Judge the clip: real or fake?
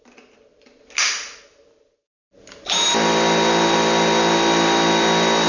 real